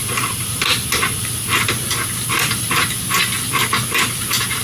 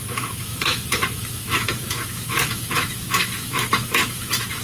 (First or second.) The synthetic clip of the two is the second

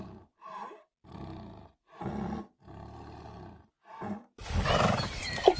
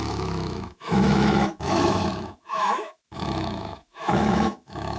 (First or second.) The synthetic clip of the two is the second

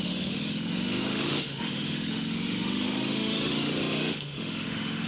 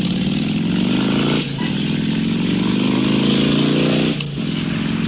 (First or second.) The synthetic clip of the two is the first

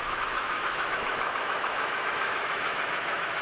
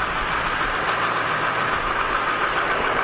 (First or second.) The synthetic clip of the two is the first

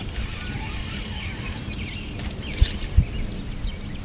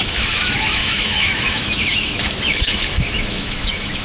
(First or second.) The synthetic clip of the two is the second